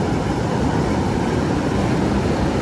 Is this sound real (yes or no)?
yes